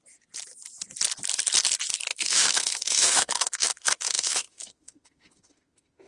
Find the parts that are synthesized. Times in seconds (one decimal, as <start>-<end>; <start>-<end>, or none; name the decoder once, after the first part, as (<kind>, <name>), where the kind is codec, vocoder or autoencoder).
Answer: 2.1-6.1 (autoencoder, DAC-VAE)